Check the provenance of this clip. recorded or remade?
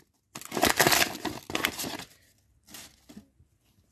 recorded